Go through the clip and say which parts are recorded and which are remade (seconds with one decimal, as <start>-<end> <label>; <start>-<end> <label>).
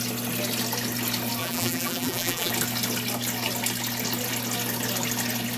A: 0.0-1.4 recorded; 1.4-2.5 remade; 2.5-5.6 recorded